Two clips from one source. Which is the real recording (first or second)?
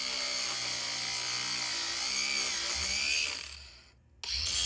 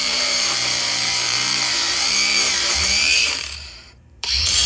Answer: first